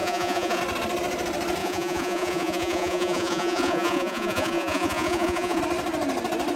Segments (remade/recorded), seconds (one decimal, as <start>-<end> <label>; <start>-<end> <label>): 0.0-0.6 remade; 0.6-1.6 recorded; 1.6-5.6 remade; 5.6-6.6 recorded